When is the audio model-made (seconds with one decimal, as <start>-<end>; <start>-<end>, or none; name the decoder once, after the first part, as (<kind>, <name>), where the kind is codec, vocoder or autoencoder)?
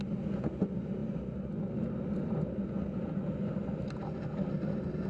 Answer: none